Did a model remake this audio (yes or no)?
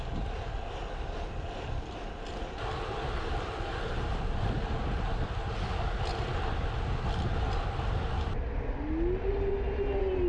no